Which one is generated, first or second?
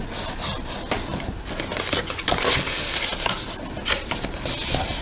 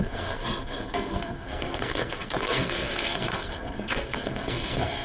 second